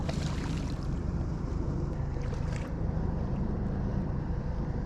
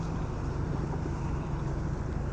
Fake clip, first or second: first